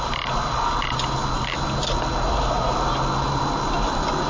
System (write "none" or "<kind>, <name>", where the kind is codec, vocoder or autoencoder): none